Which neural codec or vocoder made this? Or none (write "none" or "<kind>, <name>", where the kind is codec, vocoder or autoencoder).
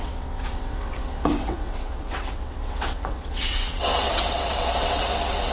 vocoder, WaveNeXt